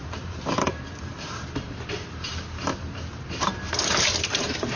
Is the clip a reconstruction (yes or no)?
yes